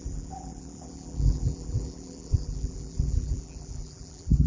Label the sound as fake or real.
fake